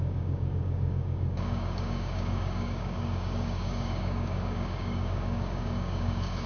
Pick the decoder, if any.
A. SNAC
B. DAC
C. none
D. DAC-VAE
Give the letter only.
B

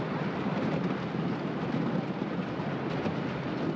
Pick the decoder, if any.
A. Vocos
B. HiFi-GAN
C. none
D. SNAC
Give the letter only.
C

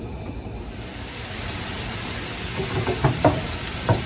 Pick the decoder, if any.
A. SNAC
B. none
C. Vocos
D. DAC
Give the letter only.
B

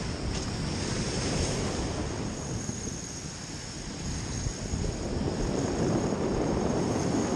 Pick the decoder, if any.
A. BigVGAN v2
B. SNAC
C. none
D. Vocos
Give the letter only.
C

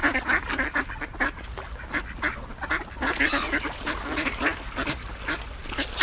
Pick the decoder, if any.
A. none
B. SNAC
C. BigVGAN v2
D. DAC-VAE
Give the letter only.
A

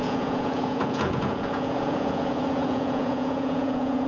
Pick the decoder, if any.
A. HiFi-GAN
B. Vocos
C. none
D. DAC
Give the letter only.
B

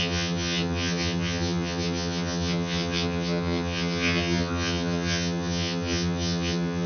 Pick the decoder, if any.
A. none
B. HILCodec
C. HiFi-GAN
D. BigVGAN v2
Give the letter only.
C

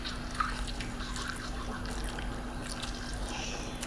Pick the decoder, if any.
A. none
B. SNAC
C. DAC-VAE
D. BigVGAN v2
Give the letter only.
A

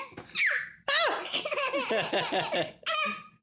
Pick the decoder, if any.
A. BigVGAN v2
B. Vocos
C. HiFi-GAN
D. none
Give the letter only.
D